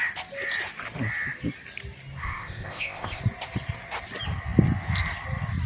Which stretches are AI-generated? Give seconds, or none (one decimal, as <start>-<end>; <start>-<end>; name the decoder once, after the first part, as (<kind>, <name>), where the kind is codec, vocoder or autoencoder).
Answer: 2.2-3.2 (codec, ZipCodec)